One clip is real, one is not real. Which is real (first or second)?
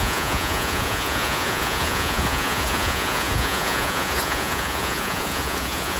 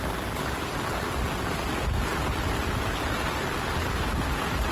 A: second